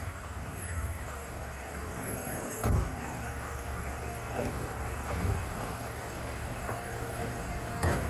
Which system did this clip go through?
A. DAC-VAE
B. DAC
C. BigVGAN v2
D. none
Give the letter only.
B